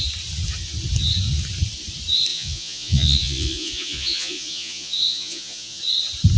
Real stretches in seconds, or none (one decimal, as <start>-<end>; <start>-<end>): 0.0-2.3; 5.8-6.4